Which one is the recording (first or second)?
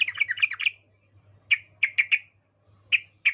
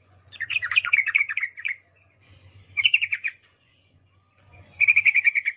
first